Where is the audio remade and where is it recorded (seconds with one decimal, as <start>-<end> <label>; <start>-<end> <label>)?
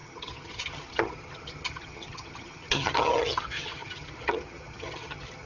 0.0-5.5 remade